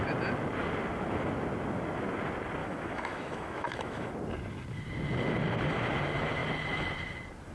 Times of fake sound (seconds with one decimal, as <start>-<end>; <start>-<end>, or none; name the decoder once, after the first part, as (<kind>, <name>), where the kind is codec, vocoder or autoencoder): 2.6-4.1 (autoencoder, DAC-VAE)